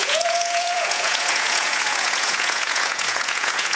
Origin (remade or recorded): remade